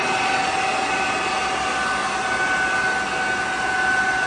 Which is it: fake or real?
real